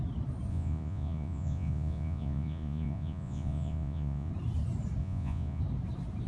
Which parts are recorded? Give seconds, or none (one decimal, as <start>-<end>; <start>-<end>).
0.0-0.5; 4.3-5.0; 5.6-6.3